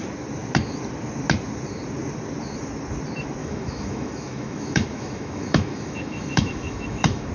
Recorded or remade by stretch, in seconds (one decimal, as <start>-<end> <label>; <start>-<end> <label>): 0.0-3.4 recorded; 3.4-7.3 remade